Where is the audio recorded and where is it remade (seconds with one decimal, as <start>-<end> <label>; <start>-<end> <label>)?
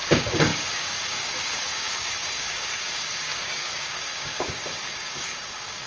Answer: 0.0-5.9 remade